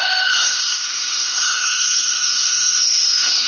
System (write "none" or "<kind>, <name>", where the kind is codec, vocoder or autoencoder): codec, SNAC